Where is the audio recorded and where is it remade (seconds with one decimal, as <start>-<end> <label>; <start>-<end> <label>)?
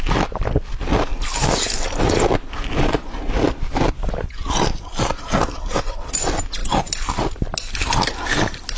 0.0-8.8 recorded